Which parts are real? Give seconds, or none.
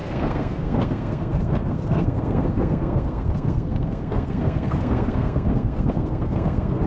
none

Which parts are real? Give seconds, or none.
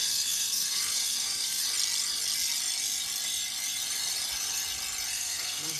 1.6-5.1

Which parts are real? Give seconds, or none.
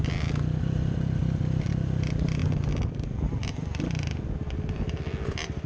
0.0-1.2; 1.7-5.7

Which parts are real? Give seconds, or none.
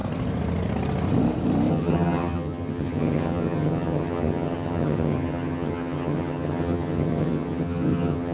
0.0-1.7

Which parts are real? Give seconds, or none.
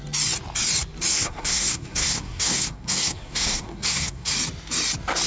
0.0-1.1; 4.3-5.3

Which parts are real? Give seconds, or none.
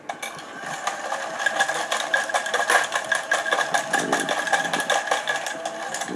0.0-6.2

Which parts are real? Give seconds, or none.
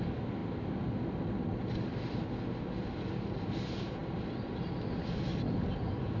0.0-6.2